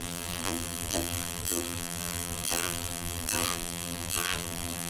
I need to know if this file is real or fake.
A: fake